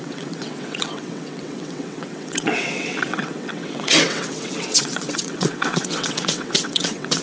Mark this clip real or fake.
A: fake